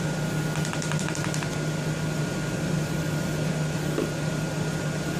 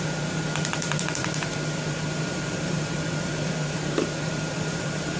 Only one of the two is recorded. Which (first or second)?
first